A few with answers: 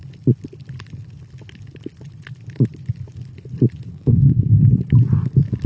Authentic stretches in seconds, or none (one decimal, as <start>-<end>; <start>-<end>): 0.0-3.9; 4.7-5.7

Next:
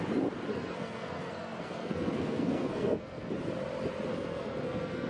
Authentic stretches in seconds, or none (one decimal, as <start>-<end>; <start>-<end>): 0.0-0.5; 3.3-4.1

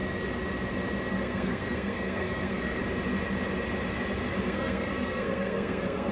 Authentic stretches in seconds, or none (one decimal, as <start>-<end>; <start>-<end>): 0.0-1.1; 2.8-4.4

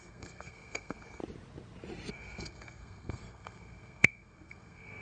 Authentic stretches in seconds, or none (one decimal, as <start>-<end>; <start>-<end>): 1.2-2.1

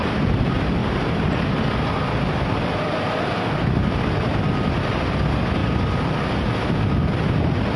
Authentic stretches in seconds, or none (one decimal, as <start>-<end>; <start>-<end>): 0.0-7.8

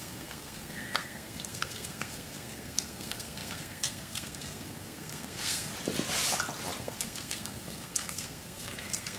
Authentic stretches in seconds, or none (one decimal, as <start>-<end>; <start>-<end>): 5.7-6.8